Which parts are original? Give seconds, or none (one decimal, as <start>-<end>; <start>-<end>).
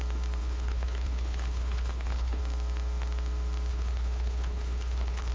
0.0-0.4; 2.4-3.7